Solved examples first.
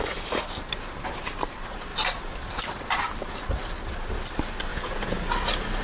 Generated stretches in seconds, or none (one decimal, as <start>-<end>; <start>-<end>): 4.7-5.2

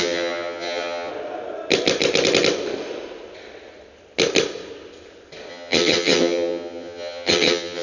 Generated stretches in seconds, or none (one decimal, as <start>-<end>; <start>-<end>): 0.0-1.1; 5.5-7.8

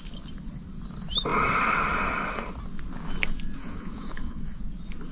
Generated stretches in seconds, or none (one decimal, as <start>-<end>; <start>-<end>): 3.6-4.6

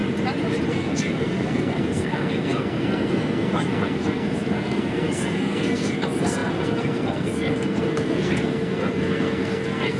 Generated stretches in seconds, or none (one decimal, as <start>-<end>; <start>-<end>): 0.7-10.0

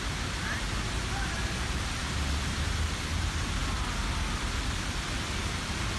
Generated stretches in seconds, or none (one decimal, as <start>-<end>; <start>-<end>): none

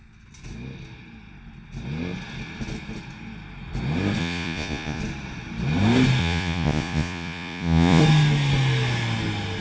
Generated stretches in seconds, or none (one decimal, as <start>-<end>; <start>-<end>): 4.2-5.0; 6.2-8.0

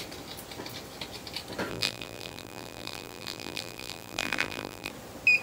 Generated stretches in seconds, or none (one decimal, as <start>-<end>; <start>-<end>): 1.7-4.9